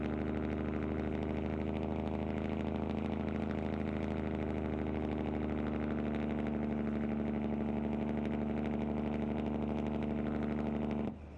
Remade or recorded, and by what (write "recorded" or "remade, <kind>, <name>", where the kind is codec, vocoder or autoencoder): recorded